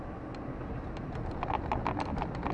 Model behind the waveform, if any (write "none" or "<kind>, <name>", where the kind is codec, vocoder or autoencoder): none